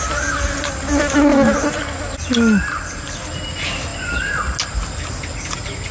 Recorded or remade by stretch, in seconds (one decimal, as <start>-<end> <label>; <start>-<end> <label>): 0.0-5.9 recorded